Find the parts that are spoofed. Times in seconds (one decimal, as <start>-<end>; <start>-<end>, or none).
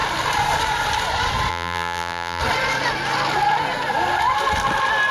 1.5-2.4